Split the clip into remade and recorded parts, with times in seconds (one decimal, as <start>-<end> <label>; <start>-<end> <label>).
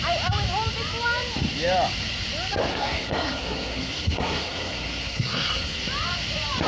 0.0-2.7 recorded; 2.7-5.8 remade; 5.8-6.7 recorded